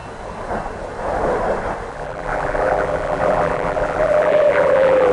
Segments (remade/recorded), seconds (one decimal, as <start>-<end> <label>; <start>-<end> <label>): 0.0-1.9 recorded; 1.9-5.1 remade